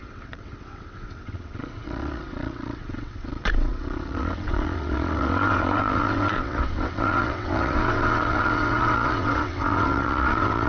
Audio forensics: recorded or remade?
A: remade